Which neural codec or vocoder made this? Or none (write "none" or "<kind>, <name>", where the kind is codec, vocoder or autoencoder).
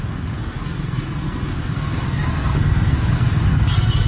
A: codec, SNAC